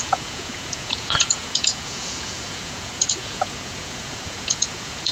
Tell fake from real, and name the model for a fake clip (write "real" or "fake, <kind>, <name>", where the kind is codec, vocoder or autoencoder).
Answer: fake, vocoder, Vocos